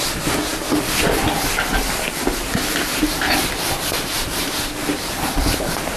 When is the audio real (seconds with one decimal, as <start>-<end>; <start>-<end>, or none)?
0.0-6.0